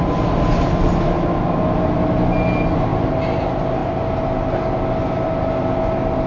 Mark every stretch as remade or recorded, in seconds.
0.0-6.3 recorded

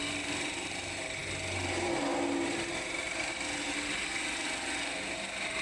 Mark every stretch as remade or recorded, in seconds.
0.0-5.6 recorded

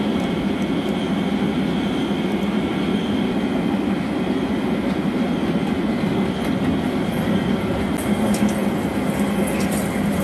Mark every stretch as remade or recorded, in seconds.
0.0-10.2 recorded

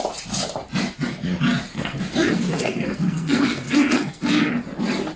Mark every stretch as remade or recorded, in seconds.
0.0-1.7 recorded; 1.7-4.5 remade; 4.5-5.2 recorded

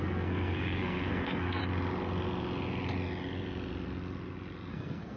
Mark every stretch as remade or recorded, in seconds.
0.0-1.6 remade; 1.6-4.7 recorded; 4.7-5.2 remade